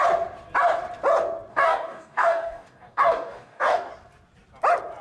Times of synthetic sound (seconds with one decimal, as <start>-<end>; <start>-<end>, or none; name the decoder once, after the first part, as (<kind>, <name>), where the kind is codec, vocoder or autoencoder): 1.5-3.9 (codec, DAC)